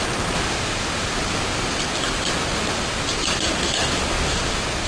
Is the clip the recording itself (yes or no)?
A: yes